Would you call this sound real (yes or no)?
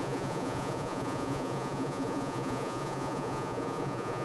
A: no